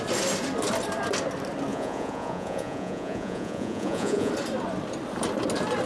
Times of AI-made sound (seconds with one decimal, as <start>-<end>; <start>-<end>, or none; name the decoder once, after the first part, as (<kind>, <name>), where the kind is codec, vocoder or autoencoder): 1.7-4.3 (vocoder, Vocos)